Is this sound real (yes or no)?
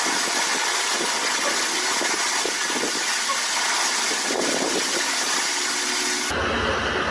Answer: yes